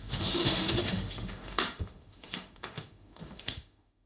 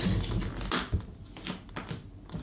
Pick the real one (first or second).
second